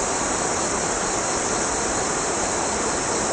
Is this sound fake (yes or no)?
no